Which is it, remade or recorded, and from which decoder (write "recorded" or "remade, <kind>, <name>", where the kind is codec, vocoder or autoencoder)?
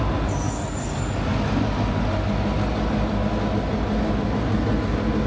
recorded